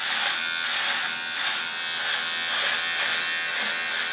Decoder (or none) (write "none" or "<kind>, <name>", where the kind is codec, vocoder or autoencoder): none